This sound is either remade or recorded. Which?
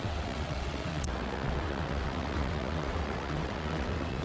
remade